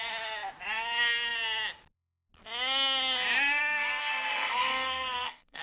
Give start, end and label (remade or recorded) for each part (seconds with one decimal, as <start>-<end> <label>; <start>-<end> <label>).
0.0-4.0 recorded; 4.0-5.6 remade